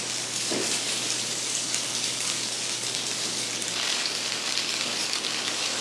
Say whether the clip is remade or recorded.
remade